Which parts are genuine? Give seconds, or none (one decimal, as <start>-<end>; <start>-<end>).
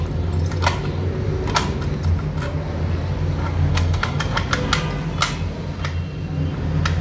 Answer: 0.0-3.7; 4.2-7.0